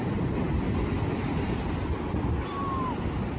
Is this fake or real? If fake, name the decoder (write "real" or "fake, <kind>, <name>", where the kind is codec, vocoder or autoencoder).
real